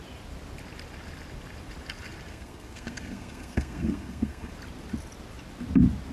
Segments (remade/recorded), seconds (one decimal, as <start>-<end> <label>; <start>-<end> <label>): 0.0-2.3 recorded; 2.3-4.5 remade; 4.5-6.1 recorded